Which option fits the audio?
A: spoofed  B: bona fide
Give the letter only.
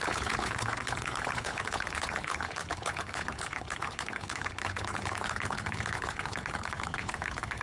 A